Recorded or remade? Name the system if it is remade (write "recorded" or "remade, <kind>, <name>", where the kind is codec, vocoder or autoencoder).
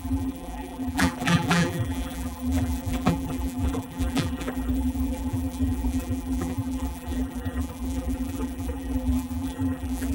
remade, vocoder, BigVGAN v2